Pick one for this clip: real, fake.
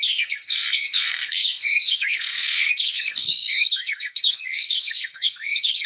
fake